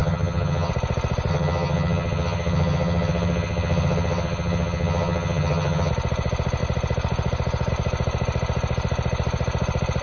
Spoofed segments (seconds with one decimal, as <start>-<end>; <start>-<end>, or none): 0.0-0.7; 1.3-5.9

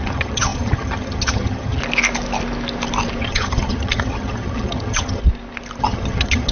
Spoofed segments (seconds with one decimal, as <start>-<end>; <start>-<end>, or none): 0.0-1.8; 3.2-5.2; 5.8-6.5

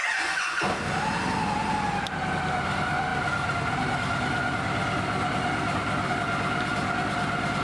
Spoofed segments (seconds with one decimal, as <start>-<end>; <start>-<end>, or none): 0.0-0.6

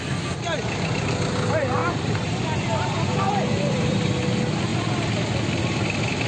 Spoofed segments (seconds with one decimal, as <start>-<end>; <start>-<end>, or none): none

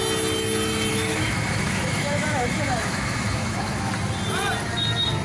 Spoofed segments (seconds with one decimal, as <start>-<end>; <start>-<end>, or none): 0.9-3.9

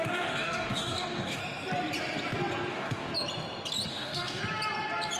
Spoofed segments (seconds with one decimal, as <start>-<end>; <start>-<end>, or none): 0.0-1.4; 2.7-3.1; 3.9-4.4

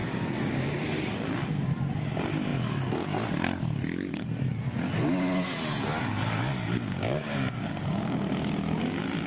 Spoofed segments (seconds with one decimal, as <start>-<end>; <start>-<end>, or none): 0.0-0.8; 6.1-8.8